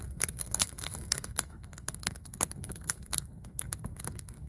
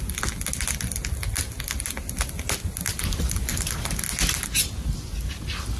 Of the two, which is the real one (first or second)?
second